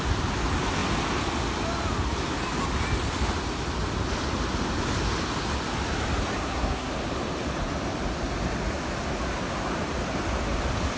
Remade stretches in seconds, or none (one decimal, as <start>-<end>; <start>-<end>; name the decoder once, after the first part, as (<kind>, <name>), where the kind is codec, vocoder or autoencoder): 6.4-6.9 (codec, SNAC)